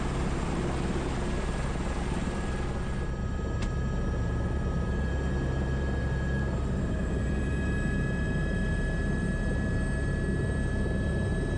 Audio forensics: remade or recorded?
recorded